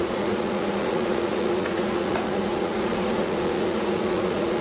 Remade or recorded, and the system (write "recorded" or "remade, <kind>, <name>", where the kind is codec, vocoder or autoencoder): remade, vocoder, Vocos